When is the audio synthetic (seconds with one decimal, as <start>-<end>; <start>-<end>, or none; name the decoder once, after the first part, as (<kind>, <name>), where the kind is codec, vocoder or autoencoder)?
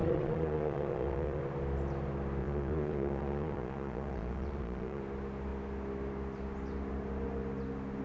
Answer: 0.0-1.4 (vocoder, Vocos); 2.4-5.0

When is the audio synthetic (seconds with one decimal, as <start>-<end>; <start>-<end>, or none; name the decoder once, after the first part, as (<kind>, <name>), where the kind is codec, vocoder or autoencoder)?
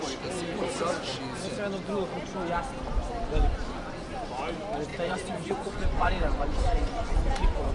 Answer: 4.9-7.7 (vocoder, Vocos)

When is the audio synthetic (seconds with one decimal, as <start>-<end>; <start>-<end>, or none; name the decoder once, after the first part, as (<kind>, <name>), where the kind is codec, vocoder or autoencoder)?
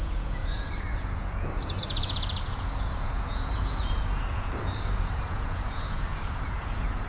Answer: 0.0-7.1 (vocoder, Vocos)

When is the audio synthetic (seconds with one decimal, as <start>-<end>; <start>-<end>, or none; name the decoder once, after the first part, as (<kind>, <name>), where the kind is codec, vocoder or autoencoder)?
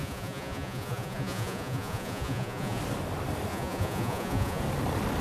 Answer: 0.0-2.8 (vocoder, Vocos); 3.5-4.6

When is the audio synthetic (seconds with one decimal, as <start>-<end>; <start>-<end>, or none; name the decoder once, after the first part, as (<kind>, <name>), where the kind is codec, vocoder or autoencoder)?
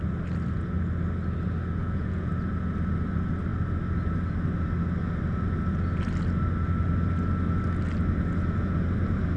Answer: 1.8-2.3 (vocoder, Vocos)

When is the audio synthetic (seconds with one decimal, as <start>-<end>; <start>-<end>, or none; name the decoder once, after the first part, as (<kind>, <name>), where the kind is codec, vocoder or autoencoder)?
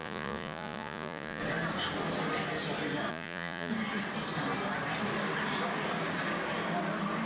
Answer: 0.0-1.4 (vocoder, Vocos); 3.1-3.7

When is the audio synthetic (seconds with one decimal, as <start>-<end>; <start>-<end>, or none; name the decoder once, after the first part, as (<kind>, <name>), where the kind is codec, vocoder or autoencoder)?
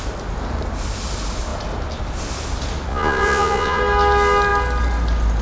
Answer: 2.9-3.8 (vocoder, Vocos)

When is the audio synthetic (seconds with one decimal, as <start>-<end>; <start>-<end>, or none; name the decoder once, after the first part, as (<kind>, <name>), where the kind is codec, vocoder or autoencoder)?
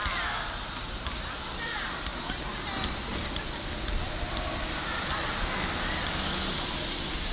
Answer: none